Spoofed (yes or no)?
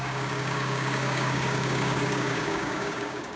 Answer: yes